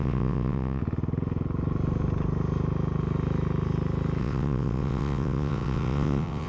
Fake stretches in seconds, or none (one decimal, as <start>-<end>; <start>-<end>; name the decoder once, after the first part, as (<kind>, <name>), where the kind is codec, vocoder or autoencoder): 0.0-0.8 (vocoder, WaveNeXt); 4.2-6.5